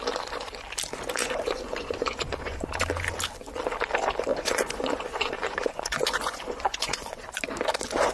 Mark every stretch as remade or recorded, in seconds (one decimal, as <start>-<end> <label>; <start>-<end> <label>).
0.0-1.2 recorded; 1.2-2.8 remade; 2.8-4.3 recorded; 4.3-7.4 remade; 7.4-8.1 recorded